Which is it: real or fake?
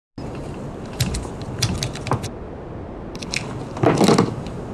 real